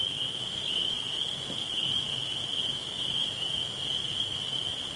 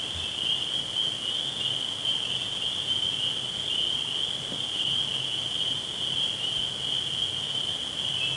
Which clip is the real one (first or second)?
second